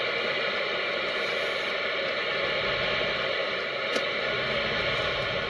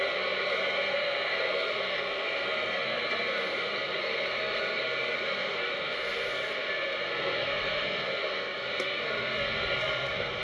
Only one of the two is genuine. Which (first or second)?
first